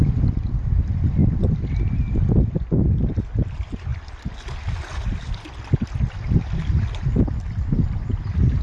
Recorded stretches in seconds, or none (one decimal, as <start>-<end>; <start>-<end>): 0.0-1.2; 1.7-8.6